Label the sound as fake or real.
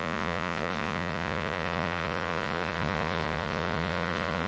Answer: fake